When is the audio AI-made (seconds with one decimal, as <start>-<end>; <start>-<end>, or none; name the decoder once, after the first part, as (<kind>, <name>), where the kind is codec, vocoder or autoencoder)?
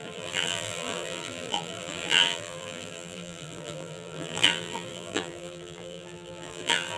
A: 0.0-7.0 (vocoder, BigVGAN v2)